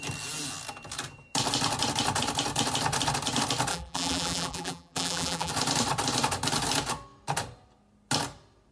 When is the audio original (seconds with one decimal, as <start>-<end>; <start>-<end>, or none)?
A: 0.0-3.7; 5.5-8.7